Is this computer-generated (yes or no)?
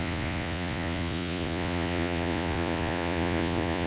yes